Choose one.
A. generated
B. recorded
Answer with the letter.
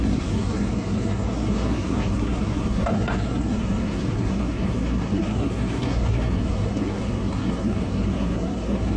A